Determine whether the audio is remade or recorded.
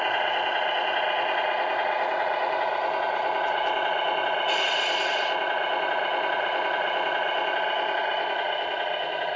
recorded